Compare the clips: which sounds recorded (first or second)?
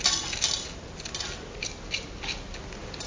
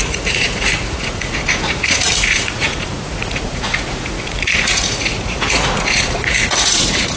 first